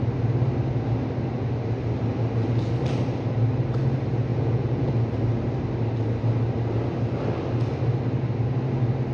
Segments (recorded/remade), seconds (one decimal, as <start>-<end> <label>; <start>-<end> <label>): 0.0-4.3 recorded; 4.3-4.9 remade; 4.9-9.1 recorded